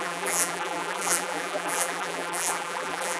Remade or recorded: remade